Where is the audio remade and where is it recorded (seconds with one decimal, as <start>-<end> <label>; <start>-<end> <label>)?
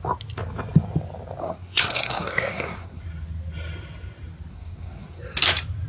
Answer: 0.0-1.4 recorded; 1.4-3.0 remade; 3.0-4.5 recorded; 4.5-5.2 remade; 5.2-5.9 recorded